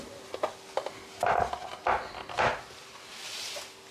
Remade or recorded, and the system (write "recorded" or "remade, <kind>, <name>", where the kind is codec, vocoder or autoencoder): recorded